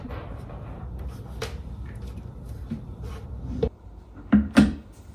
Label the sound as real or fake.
fake